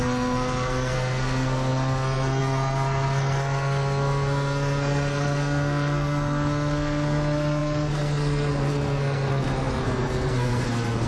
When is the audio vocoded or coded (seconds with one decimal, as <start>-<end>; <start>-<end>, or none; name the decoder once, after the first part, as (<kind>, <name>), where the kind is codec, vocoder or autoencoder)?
0.0-11.1 (codec, SNAC)